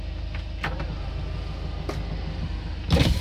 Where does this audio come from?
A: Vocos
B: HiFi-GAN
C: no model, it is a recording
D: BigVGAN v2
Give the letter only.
C